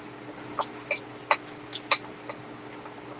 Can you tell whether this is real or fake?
real